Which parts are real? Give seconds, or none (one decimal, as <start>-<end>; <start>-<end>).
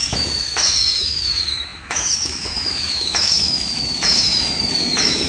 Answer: none